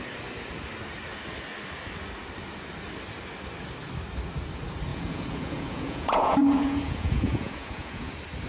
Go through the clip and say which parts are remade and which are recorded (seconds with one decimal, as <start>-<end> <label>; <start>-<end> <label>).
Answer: 0.0-4.9 recorded; 4.9-8.1 remade; 8.1-8.5 recorded